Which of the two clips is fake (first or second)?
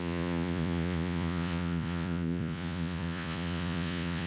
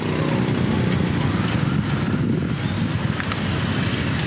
first